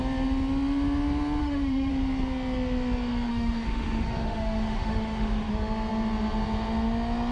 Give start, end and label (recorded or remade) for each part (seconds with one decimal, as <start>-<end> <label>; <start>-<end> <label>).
0.0-1.4 recorded; 1.4-1.9 remade; 1.9-3.3 recorded; 3.3-5.5 remade; 5.5-7.3 recorded